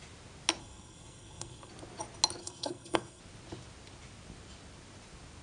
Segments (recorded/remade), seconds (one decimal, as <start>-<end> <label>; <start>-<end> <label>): 0.0-0.6 recorded; 0.6-1.7 remade; 1.7-2.4 recorded; 2.4-3.2 remade; 3.2-5.4 recorded

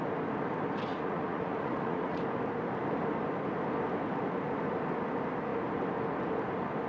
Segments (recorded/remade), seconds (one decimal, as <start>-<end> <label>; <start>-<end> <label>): 0.0-0.9 recorded; 0.9-2.2 remade; 2.2-6.9 recorded

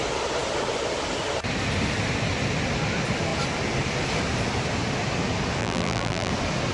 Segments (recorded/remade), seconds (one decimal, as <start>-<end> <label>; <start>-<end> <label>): 0.0-5.6 recorded; 5.6-6.3 remade; 6.3-6.7 recorded

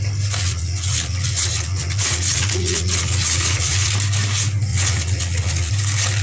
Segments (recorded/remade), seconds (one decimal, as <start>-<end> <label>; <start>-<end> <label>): 0.0-0.4 recorded; 0.4-3.9 remade; 3.9-4.7 recorded; 4.7-5.7 remade; 5.7-6.2 recorded

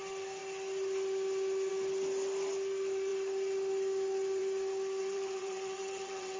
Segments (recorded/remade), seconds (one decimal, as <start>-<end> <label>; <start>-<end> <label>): 0.0-5.0 recorded; 5.0-6.4 remade